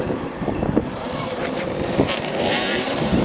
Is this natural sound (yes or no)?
no